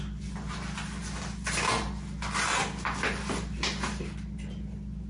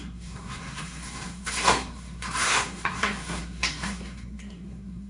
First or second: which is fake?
second